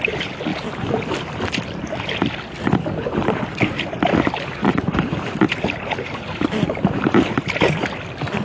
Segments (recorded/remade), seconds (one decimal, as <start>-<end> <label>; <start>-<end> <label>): 0.0-4.6 recorded; 4.6-7.0 remade; 7.0-8.4 recorded